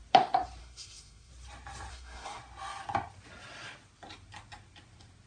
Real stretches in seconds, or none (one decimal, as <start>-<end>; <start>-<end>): 0.0-0.6; 1.3-1.9; 2.4-5.3